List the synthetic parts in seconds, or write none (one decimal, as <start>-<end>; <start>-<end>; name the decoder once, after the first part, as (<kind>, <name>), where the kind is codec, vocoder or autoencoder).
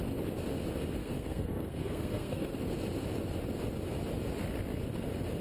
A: 1.0-2.5 (codec, SNAC)